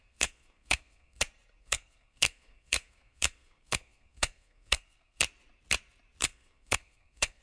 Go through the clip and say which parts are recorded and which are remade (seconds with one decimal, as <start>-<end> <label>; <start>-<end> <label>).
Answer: 0.0-1.2 remade; 1.2-1.6 recorded; 1.6-5.2 remade; 5.2-6.2 recorded; 6.2-7.4 remade